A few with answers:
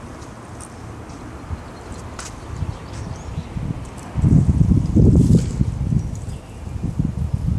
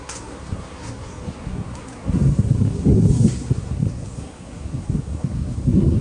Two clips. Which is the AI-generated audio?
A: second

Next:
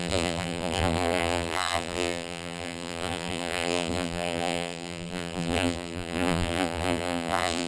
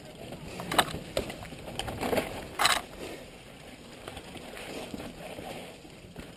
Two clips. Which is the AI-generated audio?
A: first